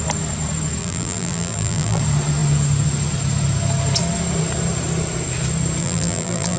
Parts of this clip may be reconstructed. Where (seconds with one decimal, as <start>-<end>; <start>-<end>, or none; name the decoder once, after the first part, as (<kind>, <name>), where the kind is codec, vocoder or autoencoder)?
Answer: 0.8-2.0 (vocoder, BigVGAN v2); 5.8-6.6

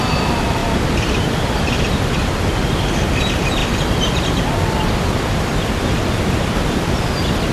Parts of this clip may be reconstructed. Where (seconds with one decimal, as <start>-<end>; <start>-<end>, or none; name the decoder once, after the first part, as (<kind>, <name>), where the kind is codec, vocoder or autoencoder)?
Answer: 0.6-1.3 (vocoder, BigVGAN v2)

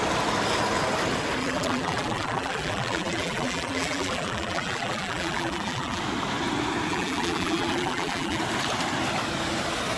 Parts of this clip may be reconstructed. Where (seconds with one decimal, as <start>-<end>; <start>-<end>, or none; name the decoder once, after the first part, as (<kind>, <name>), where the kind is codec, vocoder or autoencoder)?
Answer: 1.4-6.0 (vocoder, BigVGAN v2); 6.9-8.4

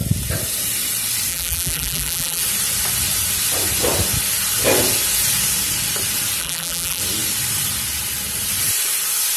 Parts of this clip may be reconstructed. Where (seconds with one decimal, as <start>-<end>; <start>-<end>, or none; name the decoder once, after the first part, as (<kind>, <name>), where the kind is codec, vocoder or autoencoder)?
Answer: 1.3-2.4 (vocoder, BigVGAN v2); 6.4-7.0

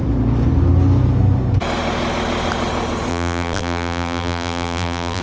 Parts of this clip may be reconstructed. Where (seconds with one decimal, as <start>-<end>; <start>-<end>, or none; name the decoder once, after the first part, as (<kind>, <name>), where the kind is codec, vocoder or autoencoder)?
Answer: 3.1-5.2 (vocoder, BigVGAN v2)

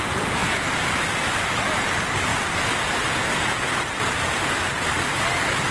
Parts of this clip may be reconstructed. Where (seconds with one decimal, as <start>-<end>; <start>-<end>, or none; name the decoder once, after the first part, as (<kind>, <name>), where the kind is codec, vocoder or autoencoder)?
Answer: 0.0-2.3 (vocoder, BigVGAN v2); 4.6-5.7

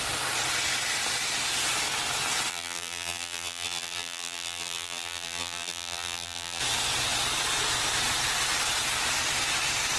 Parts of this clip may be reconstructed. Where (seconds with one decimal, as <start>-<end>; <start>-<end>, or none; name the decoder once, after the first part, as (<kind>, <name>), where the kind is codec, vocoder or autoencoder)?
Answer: 2.5-6.6 (vocoder, BigVGAN v2)

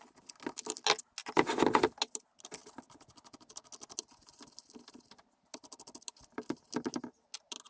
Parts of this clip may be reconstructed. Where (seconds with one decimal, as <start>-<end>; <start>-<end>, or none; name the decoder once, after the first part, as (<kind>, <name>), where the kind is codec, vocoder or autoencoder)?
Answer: none